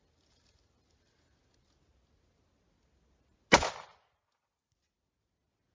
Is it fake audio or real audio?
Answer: real